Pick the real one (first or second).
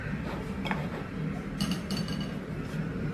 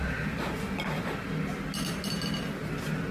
second